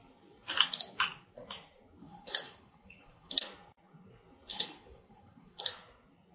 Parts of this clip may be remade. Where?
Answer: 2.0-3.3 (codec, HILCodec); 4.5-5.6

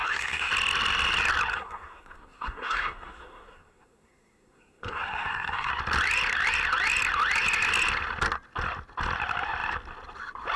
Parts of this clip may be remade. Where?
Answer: 0.0-0.5 (codec, SNAC); 1.5-5.7

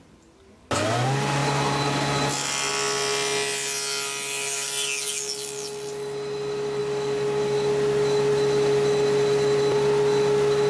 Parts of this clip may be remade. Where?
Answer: none

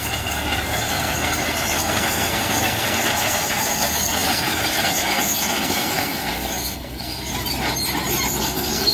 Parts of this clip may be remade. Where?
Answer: 0.0-7.3 (codec, SNAC); 8.4-8.9

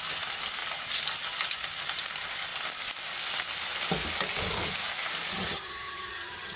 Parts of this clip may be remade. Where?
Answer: 5.3-6.6 (vocoder, HiFi-GAN)